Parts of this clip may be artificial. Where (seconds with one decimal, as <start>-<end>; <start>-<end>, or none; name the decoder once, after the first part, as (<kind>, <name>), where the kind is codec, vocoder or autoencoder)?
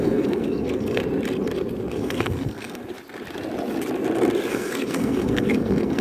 0.0-1.0 (codec, SNAC); 1.9-2.8; 4.5-6.0